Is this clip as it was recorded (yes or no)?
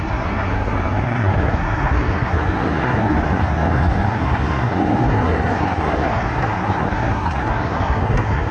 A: no